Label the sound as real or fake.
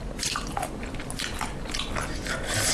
real